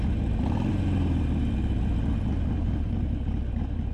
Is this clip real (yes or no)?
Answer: yes